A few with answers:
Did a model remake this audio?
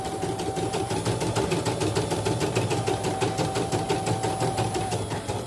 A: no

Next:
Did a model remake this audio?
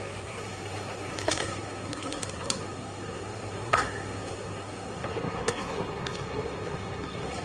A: yes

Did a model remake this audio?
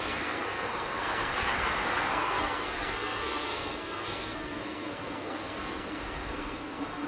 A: yes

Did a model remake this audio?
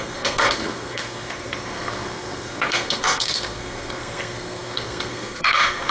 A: yes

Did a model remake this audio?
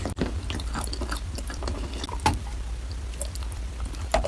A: no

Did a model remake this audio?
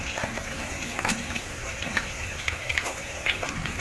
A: yes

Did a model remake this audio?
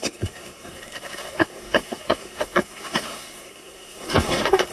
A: yes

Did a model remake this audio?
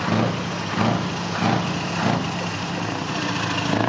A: no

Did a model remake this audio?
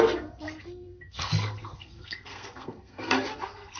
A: yes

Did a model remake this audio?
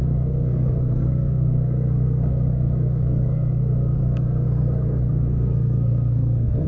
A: yes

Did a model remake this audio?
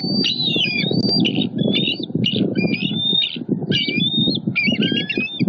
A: no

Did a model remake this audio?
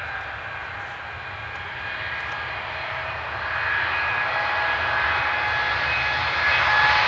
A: no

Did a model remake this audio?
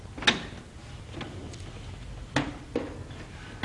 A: no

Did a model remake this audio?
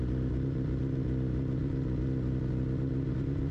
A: no